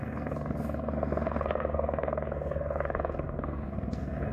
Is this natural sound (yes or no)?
no